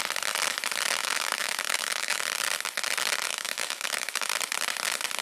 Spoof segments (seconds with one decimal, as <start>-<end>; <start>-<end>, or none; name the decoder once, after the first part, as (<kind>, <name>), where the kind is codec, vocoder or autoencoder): 1.0-2.2 (autoencoder, DAC-VAE); 3.3-4.3